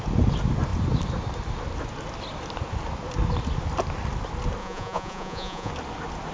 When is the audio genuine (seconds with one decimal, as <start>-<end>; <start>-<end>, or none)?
0.0-4.6; 5.7-6.3